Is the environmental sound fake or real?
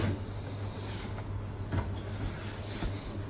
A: real